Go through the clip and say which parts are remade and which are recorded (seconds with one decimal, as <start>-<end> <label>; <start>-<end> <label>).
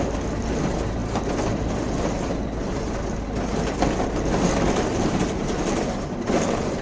0.0-6.8 recorded